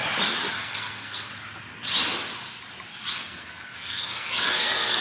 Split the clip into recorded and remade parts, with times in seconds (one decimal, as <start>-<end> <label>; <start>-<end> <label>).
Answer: 0.0-0.5 recorded; 0.5-1.3 remade; 1.3-3.1 recorded; 3.1-5.0 remade